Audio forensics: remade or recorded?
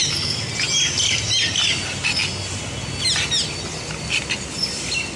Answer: recorded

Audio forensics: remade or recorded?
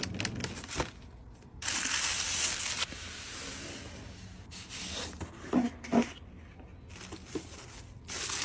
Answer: recorded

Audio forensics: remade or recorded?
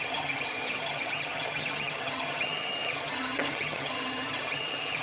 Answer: remade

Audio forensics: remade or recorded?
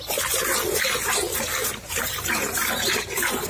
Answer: recorded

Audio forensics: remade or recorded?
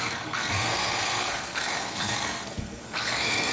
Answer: remade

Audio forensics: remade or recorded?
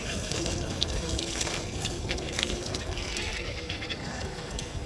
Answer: remade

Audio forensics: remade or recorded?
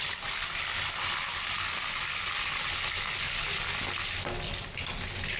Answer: recorded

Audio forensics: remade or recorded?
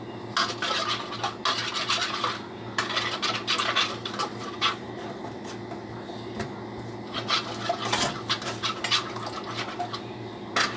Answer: recorded